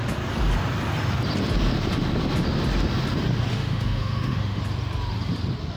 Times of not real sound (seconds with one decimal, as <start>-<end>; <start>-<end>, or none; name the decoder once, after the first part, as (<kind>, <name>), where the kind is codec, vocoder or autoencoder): 3.5-4.6 (autoencoder, DAC-VAE)